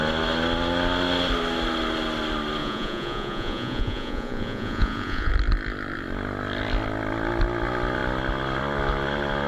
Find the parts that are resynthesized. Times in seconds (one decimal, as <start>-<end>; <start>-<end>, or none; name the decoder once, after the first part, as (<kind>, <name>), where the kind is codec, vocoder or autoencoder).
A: 2.6-5.3 (vocoder, Vocos)